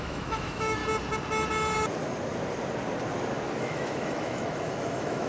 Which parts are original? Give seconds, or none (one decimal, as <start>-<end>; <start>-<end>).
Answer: 0.8-3.6